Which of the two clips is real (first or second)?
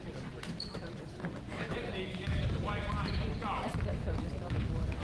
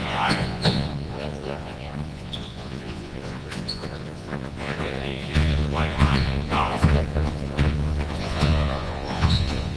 first